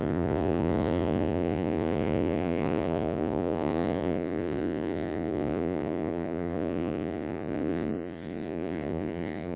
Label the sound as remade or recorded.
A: remade